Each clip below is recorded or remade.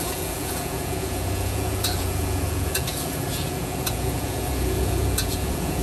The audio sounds remade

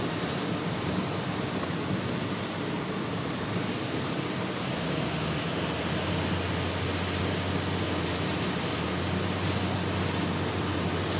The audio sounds recorded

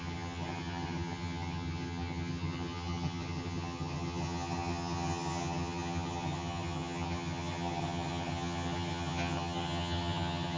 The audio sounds remade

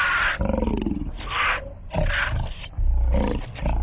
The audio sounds recorded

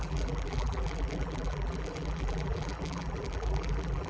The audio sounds remade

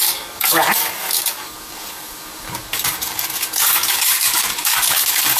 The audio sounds remade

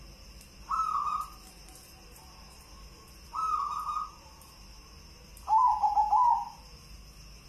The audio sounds recorded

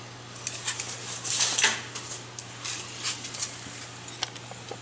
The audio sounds recorded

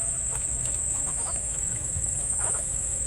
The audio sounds remade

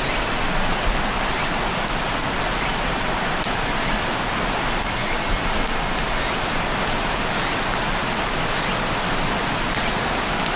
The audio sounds recorded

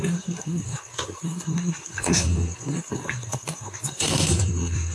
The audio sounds remade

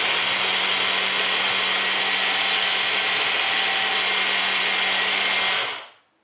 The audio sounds recorded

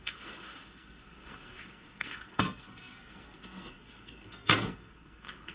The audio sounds remade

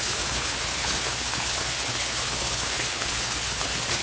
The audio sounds remade